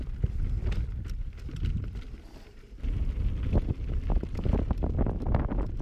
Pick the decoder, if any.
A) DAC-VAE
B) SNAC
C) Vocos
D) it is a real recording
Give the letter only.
D